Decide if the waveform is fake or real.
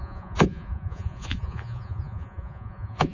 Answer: fake